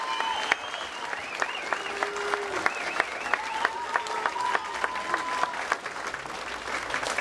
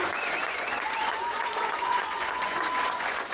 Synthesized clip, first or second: second